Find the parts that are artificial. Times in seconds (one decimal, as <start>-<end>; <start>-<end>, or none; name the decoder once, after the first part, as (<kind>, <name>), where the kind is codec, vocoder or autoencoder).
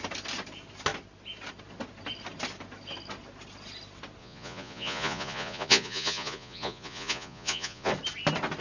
4.2-7.9 (vocoder, Vocos)